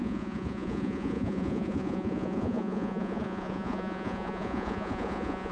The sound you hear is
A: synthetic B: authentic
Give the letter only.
A